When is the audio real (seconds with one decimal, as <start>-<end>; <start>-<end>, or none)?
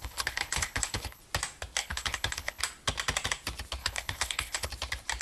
1.2-1.8; 2.6-3.8; 4.7-5.2